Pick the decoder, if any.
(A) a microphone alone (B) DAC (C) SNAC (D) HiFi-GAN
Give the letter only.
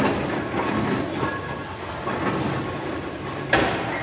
A